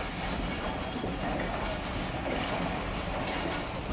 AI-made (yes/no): no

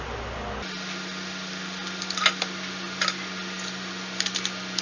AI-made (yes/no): no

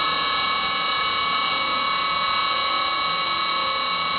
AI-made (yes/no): yes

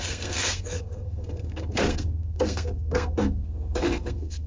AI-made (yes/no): yes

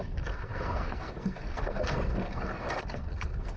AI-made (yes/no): yes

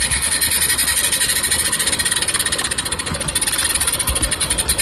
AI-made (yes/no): no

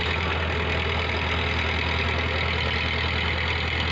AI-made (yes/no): no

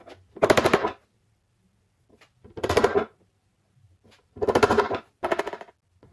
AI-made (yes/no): no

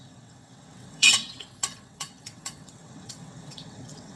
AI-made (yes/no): yes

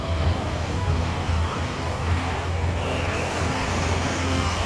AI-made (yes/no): yes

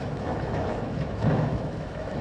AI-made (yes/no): yes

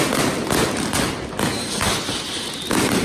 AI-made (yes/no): no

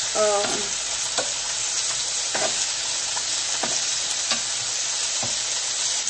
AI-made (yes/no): no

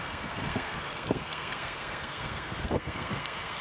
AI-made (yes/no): yes